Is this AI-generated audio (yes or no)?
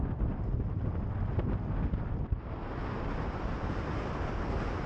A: no